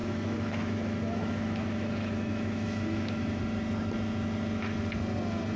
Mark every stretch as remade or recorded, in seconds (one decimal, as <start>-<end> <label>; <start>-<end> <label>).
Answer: 0.0-3.4 remade; 3.4-5.6 recorded